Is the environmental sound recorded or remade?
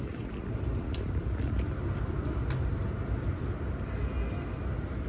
recorded